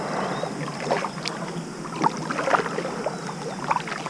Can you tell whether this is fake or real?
real